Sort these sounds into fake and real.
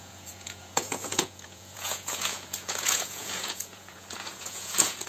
fake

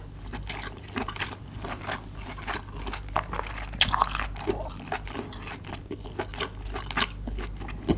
real